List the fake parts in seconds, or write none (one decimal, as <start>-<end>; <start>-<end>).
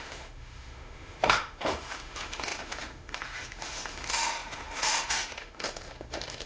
0.0-6.5